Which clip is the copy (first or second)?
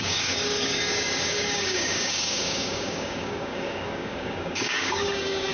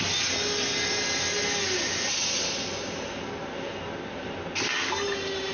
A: first